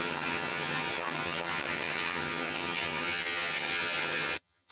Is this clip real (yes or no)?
no